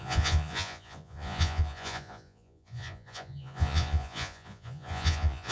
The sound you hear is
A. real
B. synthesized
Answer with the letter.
B